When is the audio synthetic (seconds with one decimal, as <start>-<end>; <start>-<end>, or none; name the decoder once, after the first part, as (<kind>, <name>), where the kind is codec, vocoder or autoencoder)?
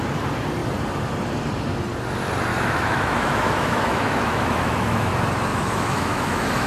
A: 2.5-5.1 (autoencoder, DAC-VAE); 5.5-6.7